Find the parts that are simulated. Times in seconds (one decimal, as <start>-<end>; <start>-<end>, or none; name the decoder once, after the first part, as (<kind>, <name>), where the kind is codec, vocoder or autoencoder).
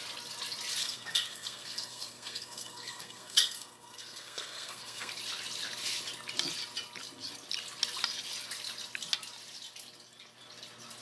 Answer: 0.8-5.1 (codec, SNAC)